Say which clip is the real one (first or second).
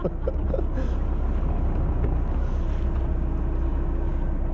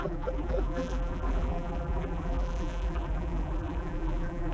first